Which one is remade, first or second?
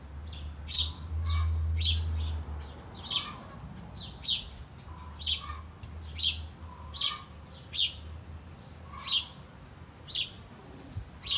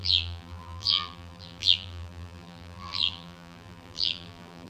second